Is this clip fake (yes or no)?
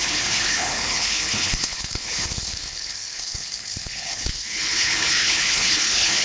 yes